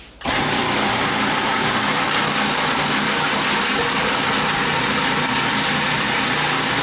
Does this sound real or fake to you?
real